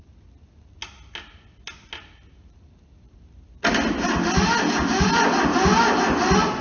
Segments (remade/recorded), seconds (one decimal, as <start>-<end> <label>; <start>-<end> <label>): 0.0-6.6 recorded